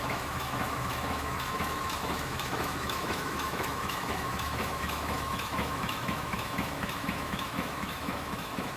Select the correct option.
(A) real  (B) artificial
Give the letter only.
B